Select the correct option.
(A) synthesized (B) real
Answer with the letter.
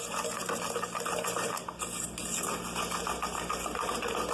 B